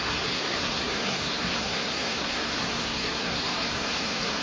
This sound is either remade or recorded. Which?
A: remade